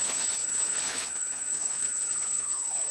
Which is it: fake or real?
fake